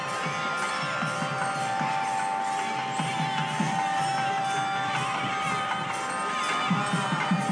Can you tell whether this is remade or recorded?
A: recorded